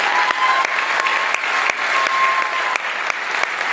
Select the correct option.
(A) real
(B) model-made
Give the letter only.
A